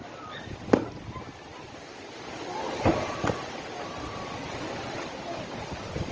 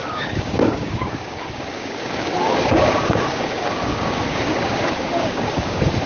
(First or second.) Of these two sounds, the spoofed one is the second